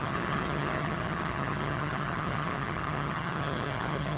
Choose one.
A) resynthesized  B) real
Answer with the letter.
A